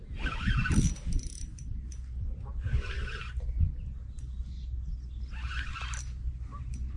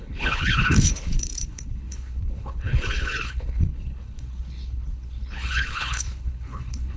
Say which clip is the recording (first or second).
first